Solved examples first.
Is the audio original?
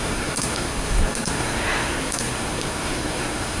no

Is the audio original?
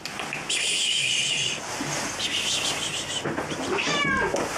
yes